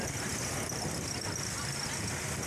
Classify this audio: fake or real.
real